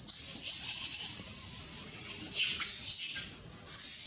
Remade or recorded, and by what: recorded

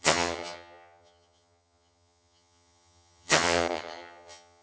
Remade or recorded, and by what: remade, vocoder, HiFi-GAN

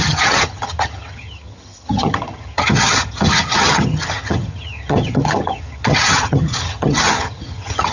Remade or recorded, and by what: remade, vocoder, HiFi-GAN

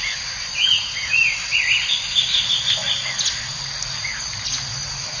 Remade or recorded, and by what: recorded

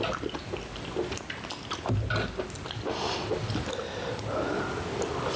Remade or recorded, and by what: recorded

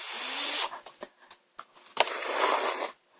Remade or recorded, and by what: recorded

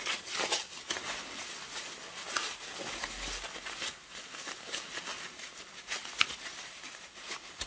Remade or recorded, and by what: recorded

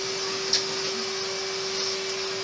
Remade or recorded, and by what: recorded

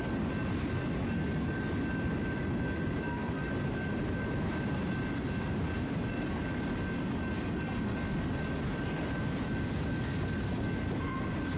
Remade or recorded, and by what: recorded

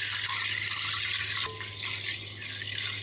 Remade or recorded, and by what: recorded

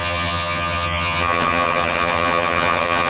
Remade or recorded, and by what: remade, vocoder, HiFi-GAN